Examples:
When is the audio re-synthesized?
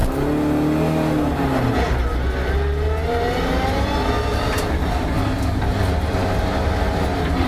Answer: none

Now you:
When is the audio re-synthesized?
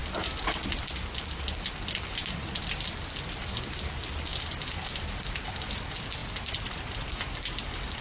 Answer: none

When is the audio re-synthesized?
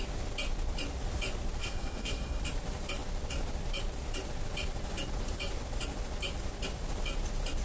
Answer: 1.6-2.4 (codec, SNAC)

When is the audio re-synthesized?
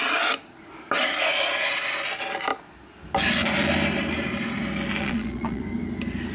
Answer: 5.0-5.6 (vocoder, Vocos)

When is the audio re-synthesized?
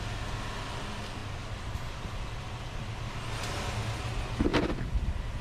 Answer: 1.2-2.0 (vocoder, BigVGAN v2); 4.5-5.4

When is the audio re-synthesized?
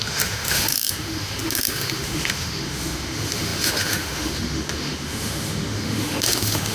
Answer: 0.0-6.7 (autoencoder, DAC-VAE)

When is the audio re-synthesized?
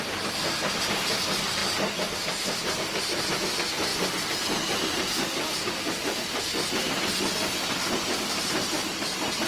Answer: none